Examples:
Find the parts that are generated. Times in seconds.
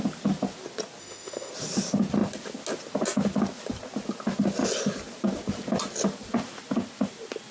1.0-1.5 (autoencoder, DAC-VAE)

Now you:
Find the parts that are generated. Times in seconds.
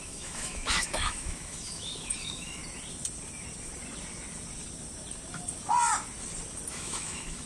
0.0-2.6 (autoencoder, DAC-VAE); 6.7-7.5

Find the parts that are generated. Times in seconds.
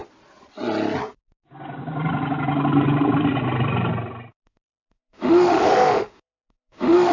4.3-7.1 (autoencoder, DAC-VAE)